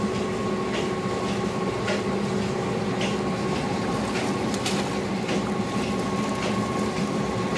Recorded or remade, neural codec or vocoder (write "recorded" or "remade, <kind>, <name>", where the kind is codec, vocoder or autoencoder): recorded